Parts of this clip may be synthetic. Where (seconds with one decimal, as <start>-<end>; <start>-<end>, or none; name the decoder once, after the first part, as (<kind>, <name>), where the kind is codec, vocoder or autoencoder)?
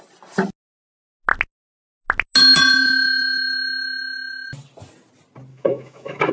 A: 5.5-6.3 (autoencoder, DAC-VAE)